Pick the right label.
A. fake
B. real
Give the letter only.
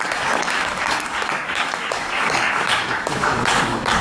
A